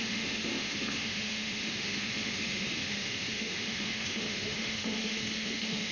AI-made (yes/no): yes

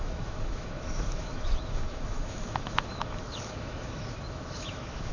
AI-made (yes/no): yes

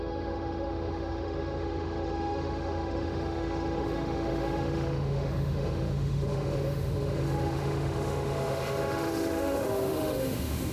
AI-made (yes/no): yes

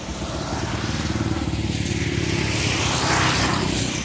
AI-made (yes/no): no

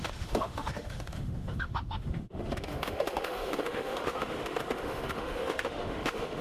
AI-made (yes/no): yes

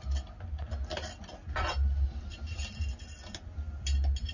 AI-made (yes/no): no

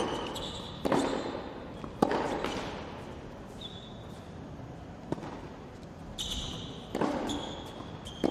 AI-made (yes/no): no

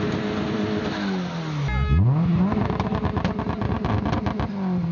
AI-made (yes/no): no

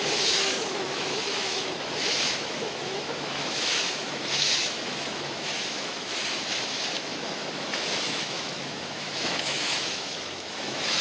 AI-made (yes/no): yes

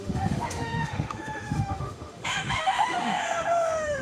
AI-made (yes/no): yes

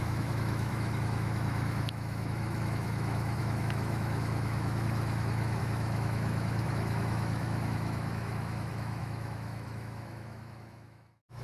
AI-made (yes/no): yes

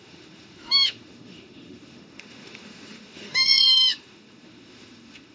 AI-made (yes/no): yes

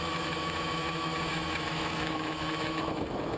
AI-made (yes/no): yes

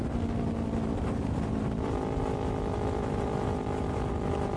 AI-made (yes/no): no